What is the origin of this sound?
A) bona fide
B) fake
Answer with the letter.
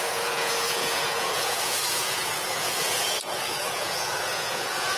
B